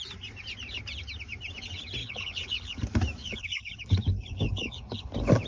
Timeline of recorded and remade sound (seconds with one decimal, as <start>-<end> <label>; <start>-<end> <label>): 0.0-2.0 recorded; 2.0-2.8 remade; 2.8-3.2 recorded; 3.2-5.1 remade; 5.1-5.5 recorded